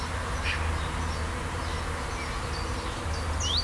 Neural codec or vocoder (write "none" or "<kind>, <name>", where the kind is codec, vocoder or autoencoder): none